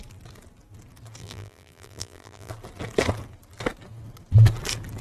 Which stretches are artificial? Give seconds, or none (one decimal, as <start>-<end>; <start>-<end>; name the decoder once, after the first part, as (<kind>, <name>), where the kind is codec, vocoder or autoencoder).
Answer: 1.2-2.5 (vocoder, BigVGAN v2)